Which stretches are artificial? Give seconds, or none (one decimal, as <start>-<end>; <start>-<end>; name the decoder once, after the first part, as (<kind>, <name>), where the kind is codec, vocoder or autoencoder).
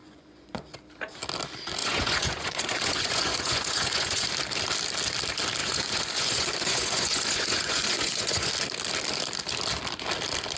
0.0-0.6 (vocoder, Vocos); 1.8-4.3; 5.6-8.5